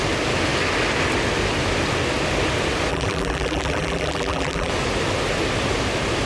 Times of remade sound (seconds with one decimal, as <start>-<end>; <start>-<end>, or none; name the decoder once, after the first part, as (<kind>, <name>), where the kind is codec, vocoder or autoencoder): 2.9-4.7 (vocoder, BigVGAN v2)